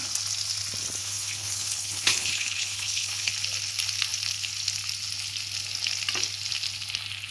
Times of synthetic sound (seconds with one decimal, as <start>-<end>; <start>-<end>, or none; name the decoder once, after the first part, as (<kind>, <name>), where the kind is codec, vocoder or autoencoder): 1.0-3.3 (codec, HILCodec)